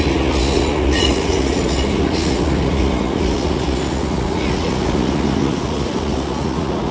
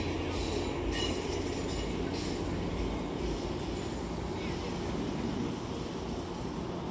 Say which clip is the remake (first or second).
first